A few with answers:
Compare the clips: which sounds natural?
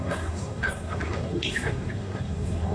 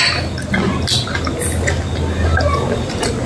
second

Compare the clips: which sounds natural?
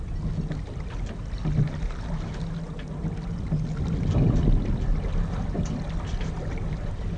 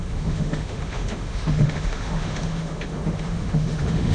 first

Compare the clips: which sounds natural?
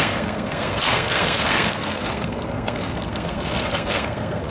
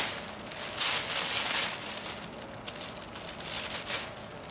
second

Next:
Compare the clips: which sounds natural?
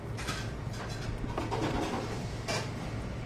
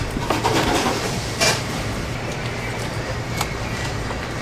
first